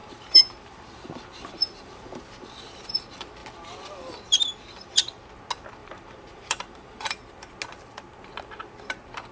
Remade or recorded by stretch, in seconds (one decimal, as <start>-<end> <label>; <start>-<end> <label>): 0.0-2.2 remade; 2.2-5.8 recorded; 5.8-7.5 remade; 7.5-9.3 recorded